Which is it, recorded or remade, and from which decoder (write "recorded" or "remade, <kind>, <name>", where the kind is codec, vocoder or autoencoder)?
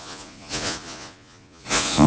remade, vocoder, Vocos